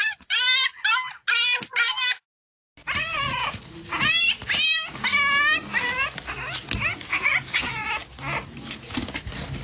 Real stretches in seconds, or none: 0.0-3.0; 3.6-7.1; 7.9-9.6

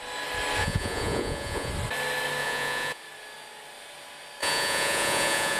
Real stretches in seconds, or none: 0.0-0.6; 1.7-2.4; 3.0-4.4

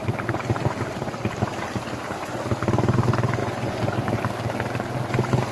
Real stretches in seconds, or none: 0.0-3.4; 4.2-5.5